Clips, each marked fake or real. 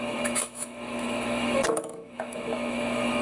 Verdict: fake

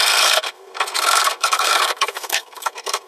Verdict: fake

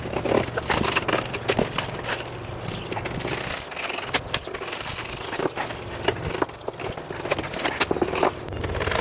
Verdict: real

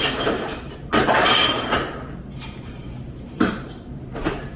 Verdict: fake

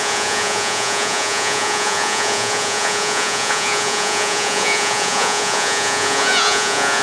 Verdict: fake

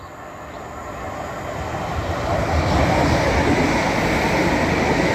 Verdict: real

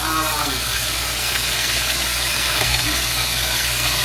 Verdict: fake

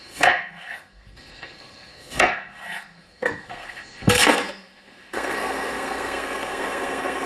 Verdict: fake